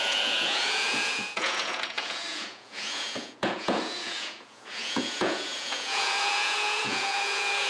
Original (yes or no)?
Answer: no